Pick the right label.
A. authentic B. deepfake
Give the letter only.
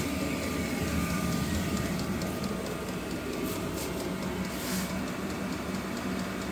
A